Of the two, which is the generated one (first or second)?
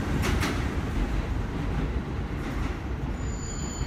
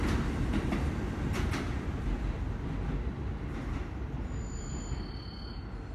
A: first